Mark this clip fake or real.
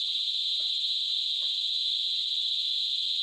real